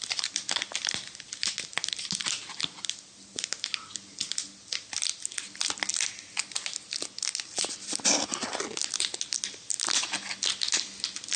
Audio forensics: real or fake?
real